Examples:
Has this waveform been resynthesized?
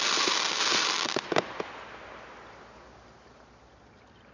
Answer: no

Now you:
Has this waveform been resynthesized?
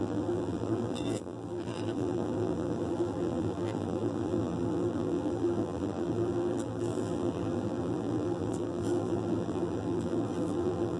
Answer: yes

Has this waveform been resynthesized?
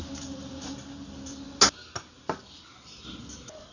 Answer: no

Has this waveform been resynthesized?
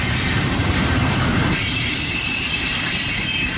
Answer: yes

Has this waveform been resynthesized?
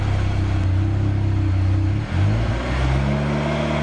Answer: no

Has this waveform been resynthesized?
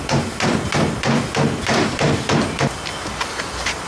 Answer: yes